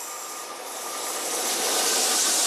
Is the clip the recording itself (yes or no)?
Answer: yes